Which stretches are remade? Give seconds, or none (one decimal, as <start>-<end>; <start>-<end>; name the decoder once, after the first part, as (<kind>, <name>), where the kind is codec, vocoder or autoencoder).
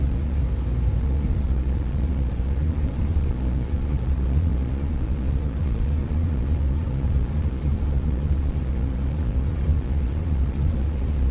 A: 0.0-0.4 (vocoder, Vocos); 1.0-11.3